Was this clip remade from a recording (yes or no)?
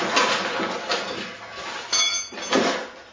no